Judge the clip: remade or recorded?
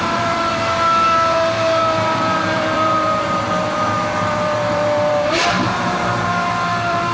remade